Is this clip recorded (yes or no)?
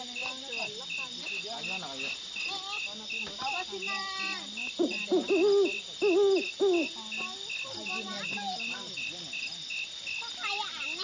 yes